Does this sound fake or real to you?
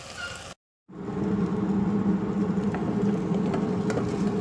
real